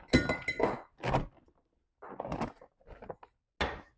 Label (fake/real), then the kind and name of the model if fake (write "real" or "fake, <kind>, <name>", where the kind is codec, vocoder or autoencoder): real